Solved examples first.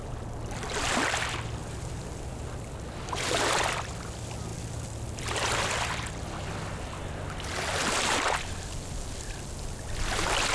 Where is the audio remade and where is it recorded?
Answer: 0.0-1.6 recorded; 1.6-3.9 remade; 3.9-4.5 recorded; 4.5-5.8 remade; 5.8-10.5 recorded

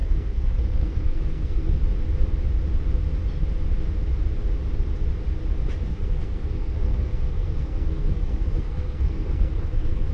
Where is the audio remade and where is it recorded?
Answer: 0.0-1.8 remade; 1.8-5.9 recorded; 5.9-10.1 remade